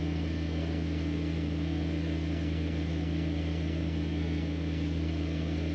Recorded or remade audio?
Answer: remade